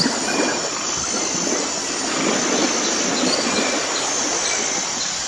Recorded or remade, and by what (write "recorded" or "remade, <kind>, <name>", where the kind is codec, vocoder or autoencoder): recorded